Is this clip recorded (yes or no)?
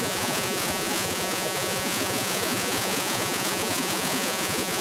no